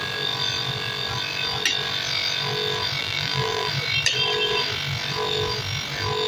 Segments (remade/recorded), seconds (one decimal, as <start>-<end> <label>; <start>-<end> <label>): 0.0-3.0 recorded; 3.0-3.7 remade; 3.7-6.3 recorded